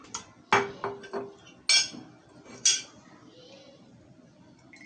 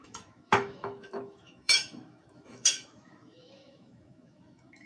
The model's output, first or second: second